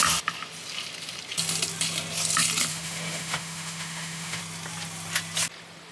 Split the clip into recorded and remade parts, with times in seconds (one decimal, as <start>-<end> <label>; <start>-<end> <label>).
0.0-2.7 recorded; 2.7-4.4 remade; 4.4-5.9 recorded